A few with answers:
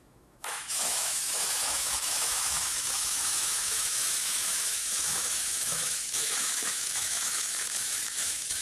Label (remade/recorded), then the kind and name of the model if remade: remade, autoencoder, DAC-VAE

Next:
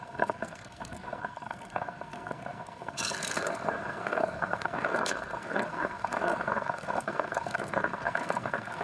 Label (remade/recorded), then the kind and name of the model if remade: remade, codec, SNAC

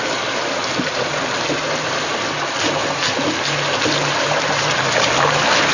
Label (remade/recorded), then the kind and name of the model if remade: recorded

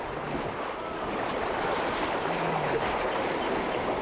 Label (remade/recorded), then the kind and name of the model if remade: recorded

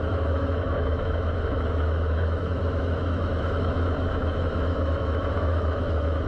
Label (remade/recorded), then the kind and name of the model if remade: remade, autoencoder, DAC-VAE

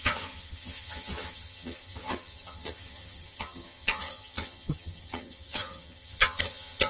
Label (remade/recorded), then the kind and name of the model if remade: remade, vocoder, HiFi-GAN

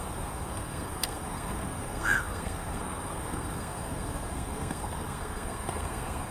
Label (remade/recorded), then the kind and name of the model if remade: remade, codec, SNAC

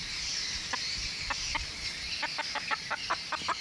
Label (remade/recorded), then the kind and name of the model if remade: remade, vocoder, BigVGAN v2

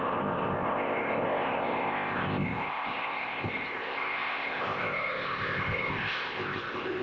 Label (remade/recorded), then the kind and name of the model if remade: remade, codec, ZipCodec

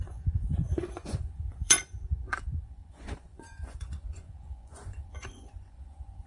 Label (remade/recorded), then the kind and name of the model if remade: remade, vocoder, Vocos